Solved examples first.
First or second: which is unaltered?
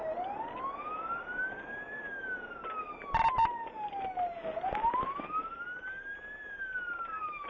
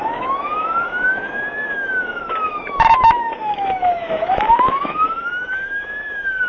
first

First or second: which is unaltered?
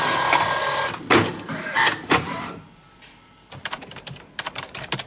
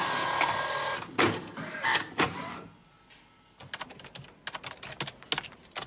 second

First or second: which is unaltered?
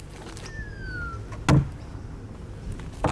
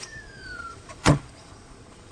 first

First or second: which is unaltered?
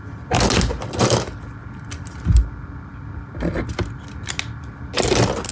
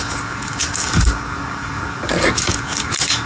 first